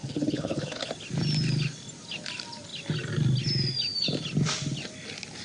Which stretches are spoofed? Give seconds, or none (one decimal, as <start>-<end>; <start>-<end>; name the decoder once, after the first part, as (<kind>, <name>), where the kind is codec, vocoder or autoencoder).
0.0-0.9 (codec, HILCodec)